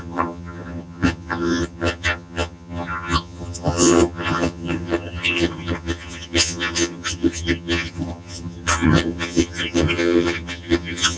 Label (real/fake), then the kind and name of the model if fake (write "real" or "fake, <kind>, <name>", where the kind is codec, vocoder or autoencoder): fake, vocoder, HiFi-GAN